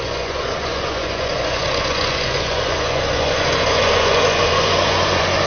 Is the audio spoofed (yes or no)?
yes